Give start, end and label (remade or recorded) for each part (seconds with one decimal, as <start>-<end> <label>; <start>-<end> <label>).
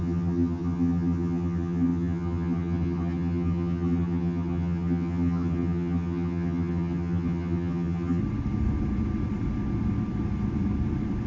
0.0-8.2 remade; 8.2-11.3 recorded